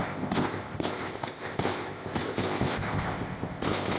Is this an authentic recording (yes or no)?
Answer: no